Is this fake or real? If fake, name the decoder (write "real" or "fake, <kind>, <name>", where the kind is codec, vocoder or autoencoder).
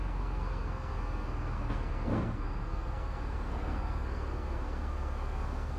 fake, codec, SNAC